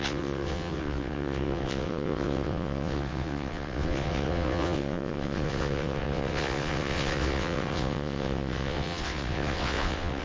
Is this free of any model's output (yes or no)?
no